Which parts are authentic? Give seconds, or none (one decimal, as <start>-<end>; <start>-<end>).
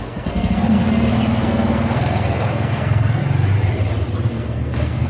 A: 3.2-4.3